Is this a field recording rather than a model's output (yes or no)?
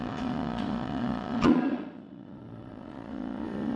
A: no